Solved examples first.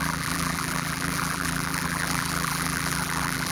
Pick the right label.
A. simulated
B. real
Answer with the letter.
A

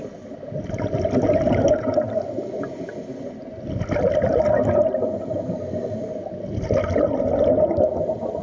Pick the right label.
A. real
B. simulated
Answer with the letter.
A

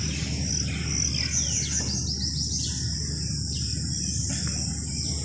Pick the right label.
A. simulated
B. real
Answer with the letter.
B